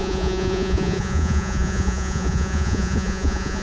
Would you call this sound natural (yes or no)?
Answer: no